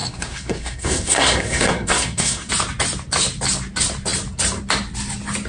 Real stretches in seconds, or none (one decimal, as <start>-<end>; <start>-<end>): 2.5-5.5